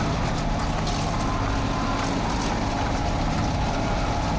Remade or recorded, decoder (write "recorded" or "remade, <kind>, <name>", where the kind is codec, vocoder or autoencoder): recorded